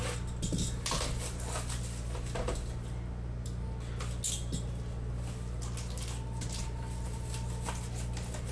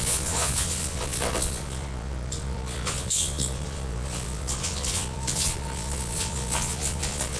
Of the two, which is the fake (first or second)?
second